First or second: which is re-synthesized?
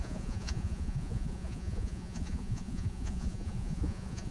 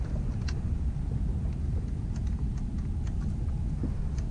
first